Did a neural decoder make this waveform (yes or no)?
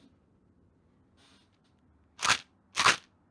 no